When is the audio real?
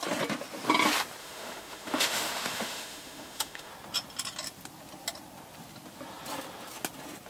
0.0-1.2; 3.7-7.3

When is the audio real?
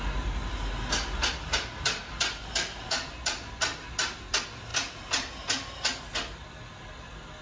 0.0-7.4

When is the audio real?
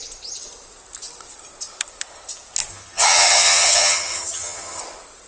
0.0-2.7; 4.8-5.3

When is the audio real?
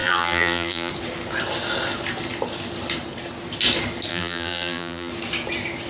0.9-4.1; 5.1-5.9